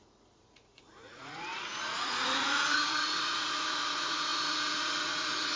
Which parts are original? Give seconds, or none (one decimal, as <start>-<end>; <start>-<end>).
none